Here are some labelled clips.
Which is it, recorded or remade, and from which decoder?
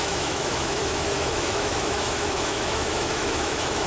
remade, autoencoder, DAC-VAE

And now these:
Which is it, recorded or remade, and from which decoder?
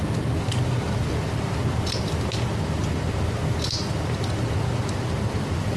recorded